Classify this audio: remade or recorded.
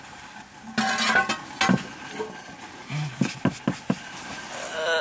recorded